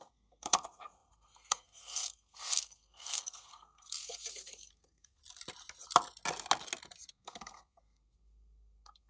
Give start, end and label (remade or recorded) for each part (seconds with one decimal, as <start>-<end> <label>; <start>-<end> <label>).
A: 0.0-5.2 remade; 5.2-7.1 recorded; 7.1-9.1 remade